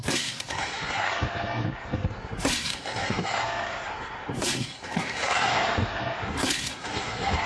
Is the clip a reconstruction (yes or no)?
yes